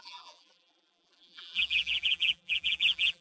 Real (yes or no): no